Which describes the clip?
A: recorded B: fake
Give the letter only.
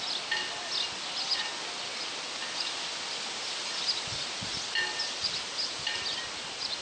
A